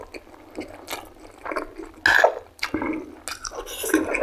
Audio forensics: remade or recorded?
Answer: recorded